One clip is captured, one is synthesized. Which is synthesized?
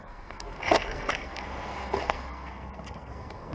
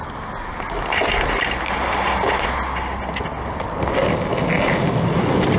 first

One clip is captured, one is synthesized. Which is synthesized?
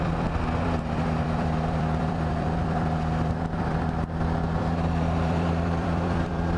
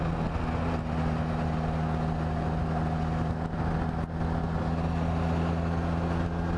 first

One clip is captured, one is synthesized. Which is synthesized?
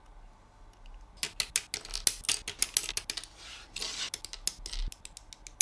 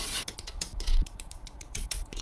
second